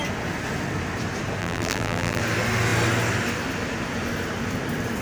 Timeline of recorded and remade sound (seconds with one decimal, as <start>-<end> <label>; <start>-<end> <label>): 0.0-1.4 recorded; 1.4-2.2 remade; 2.2-5.0 recorded